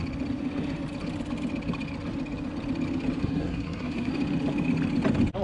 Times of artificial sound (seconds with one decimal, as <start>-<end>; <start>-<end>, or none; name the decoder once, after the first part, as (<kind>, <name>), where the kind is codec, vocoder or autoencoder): 3.2-4.1 (codec, SNAC)